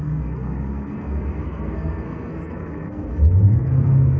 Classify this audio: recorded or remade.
remade